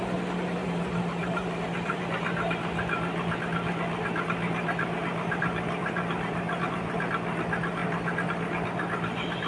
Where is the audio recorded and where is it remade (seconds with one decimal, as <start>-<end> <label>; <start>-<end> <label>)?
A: 0.0-0.6 recorded; 0.6-2.0 remade; 2.0-5.8 recorded; 5.8-6.9 remade; 6.9-9.5 recorded

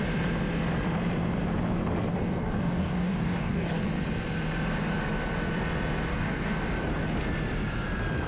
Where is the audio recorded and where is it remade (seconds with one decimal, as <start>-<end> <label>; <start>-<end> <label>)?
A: 0.0-2.1 recorded; 2.1-3.8 remade; 3.8-6.1 recorded; 6.1-6.6 remade; 6.6-8.3 recorded

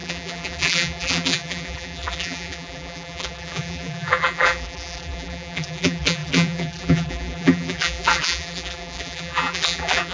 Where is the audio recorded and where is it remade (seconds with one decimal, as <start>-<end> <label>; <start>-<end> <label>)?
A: 0.0-10.1 remade

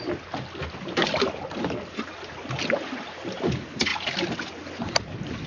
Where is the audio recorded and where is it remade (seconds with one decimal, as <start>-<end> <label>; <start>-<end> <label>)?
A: 0.0-5.5 recorded

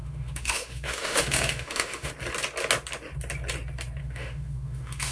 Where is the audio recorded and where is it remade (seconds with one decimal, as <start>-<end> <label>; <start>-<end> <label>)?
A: 0.0-2.1 remade; 2.1-4.0 recorded; 4.0-5.1 remade

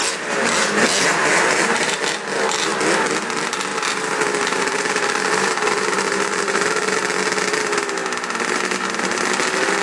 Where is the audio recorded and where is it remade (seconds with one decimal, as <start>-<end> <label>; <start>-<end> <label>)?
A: 0.0-1.4 recorded; 1.4-2.0 remade; 2.0-3.7 recorded; 3.7-7.0 remade; 7.0-9.8 recorded